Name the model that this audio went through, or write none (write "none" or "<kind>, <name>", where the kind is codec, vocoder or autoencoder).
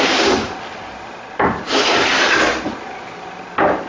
vocoder, BigVGAN v2